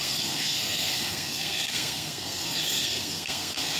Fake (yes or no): yes